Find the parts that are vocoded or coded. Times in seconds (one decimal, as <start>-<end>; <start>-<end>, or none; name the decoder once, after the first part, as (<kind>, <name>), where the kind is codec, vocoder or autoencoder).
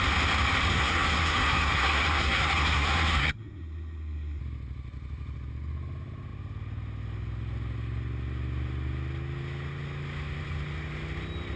0.7-4.4 (codec, SNAC)